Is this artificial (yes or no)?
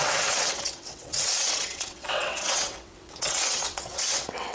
yes